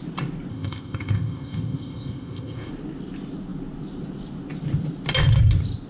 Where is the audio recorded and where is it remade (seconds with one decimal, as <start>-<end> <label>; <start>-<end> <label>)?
0.0-0.5 recorded; 0.5-2.7 remade; 2.7-5.9 recorded